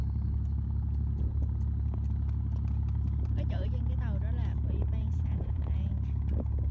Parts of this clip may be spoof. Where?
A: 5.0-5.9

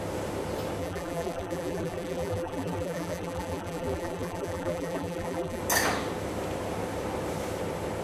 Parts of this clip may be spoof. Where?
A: 0.8-5.6

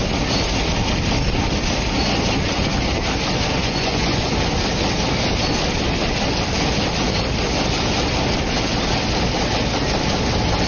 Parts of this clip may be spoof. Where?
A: 3.6-4.3

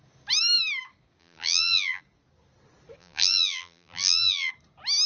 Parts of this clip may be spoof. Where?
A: 1.2-2.0; 3.0-4.5

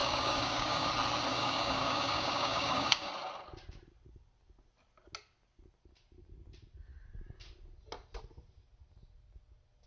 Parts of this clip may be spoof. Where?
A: 0.0-0.9; 1.3-3.1

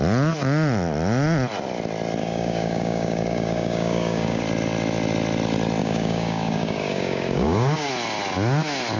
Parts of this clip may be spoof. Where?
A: 2.2-4.4; 5.8-7.9

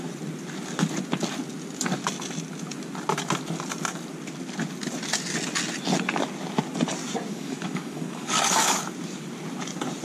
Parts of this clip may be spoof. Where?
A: 7.3-8.8